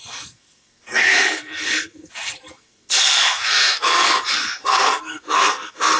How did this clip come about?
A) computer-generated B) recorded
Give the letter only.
A